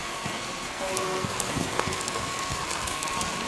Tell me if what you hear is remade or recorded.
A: remade